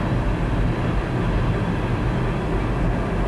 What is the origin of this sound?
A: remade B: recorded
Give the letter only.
B